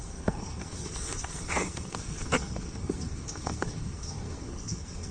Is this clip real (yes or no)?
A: no